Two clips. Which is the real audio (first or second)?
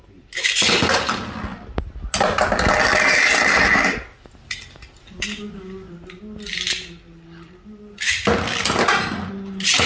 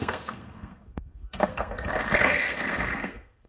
first